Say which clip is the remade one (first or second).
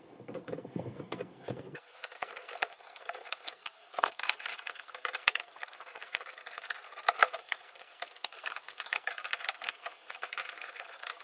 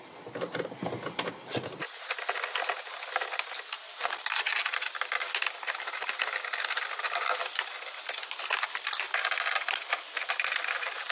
first